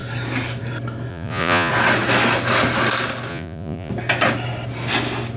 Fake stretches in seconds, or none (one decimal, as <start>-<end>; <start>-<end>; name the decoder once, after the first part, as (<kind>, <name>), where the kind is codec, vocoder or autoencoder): 1.1-1.7 (vocoder, Vocos); 3.3-3.9